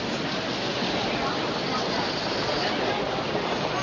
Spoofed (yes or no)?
no